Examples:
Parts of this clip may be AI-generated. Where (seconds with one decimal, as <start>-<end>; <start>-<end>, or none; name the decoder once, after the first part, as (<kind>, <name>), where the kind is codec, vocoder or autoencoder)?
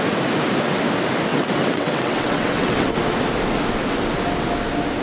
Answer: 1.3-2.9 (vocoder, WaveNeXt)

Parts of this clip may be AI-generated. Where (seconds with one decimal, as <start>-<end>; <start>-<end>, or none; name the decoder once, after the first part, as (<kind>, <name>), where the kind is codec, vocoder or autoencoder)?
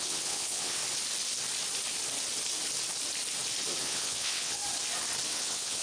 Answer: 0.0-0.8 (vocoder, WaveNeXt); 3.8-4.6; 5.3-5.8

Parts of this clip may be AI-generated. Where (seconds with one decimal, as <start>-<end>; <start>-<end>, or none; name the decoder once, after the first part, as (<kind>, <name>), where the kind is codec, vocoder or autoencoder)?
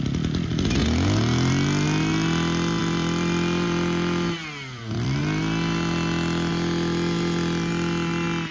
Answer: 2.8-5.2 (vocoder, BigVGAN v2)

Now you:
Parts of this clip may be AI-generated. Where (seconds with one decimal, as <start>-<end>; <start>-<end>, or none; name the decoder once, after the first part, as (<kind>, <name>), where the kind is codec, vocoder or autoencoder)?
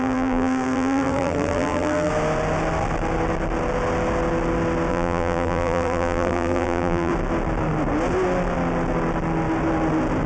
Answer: 0.0-2.1 (vocoder, BigVGAN v2); 4.9-7.1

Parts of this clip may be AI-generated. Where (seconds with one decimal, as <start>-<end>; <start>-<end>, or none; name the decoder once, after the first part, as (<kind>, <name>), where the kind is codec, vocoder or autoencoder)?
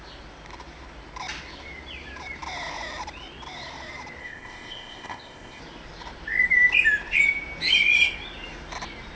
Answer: 4.2-5.6 (codec, ZipCodec)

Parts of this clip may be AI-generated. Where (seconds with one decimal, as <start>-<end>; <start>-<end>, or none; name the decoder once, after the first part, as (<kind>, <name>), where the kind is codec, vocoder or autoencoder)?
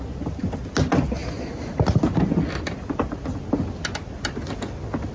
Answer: none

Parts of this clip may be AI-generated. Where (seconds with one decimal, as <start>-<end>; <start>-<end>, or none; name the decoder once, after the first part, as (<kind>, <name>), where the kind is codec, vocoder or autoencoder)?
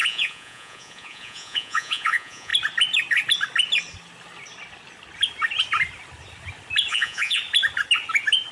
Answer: 0.0-2.5 (vocoder, Vocos); 6.9-7.4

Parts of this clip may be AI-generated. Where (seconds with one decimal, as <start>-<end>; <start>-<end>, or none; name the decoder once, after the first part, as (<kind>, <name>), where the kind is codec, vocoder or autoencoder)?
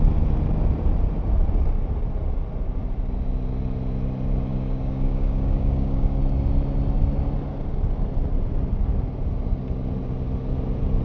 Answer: 4.5-6.2 (codec, DAC)